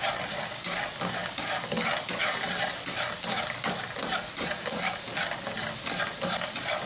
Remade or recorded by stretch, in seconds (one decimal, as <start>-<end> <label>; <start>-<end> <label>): 0.0-6.9 recorded